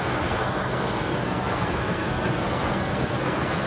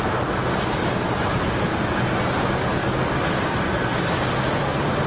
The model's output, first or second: first